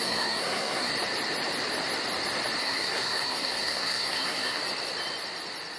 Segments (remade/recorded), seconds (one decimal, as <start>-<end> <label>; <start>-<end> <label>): 0.0-0.9 remade; 0.9-2.6 recorded; 2.6-4.6 remade; 4.6-5.8 recorded